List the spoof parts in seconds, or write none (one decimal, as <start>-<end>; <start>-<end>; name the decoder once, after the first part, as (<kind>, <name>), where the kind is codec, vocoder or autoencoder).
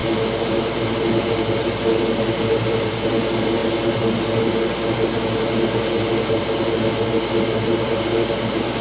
none